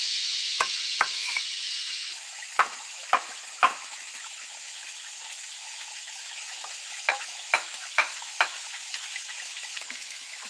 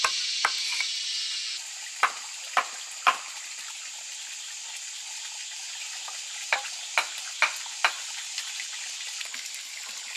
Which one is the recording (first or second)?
second